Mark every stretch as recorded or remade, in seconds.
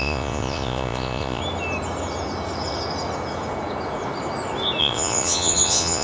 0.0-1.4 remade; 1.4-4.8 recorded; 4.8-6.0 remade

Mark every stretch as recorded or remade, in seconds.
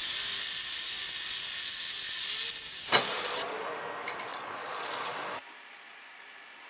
0.0-4.3 recorded; 4.3-4.9 remade; 4.9-6.7 recorded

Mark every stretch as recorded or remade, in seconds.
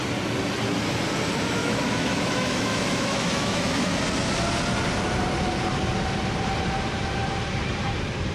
0.0-1.6 recorded; 1.6-4.0 remade; 4.0-8.3 recorded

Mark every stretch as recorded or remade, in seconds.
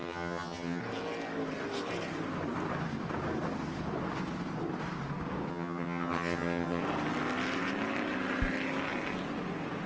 0.0-0.8 remade; 0.8-5.5 recorded; 5.5-6.8 remade; 6.8-9.9 recorded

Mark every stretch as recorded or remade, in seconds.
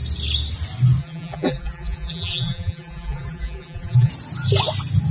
0.0-1.0 recorded; 1.0-4.1 remade; 4.1-5.1 recorded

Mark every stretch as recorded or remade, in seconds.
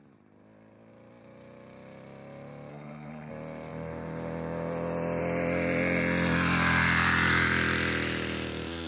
0.0-2.7 recorded; 2.7-3.3 remade; 3.3-8.9 recorded